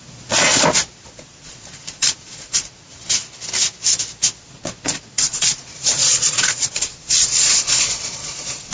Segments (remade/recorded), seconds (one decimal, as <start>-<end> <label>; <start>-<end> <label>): 0.0-0.5 remade; 0.5-1.2 recorded; 1.2-3.0 remade; 3.0-4.4 recorded; 4.4-8.7 remade